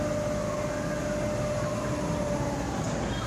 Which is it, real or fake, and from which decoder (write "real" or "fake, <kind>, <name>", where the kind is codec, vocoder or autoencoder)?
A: real